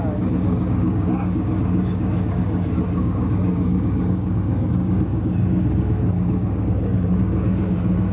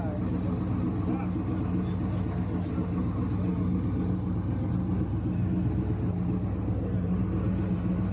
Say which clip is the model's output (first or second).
first